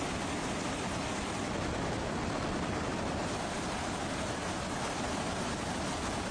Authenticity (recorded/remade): recorded